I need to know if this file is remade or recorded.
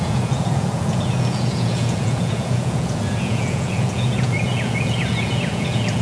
remade